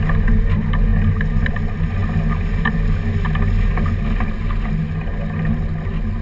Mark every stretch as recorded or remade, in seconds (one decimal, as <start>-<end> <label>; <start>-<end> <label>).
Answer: 0.0-6.2 recorded